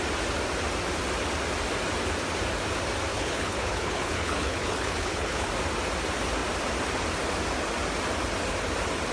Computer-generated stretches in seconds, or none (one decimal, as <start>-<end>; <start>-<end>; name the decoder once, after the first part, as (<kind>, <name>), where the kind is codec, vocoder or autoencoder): 3.1-5.5 (codec, HILCodec)